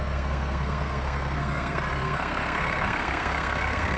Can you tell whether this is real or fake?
fake